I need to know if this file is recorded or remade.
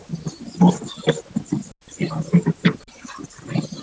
recorded